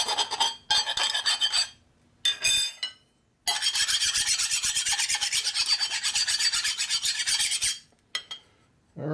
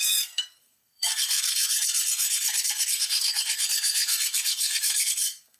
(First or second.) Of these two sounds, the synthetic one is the second